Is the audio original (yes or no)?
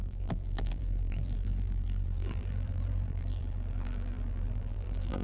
no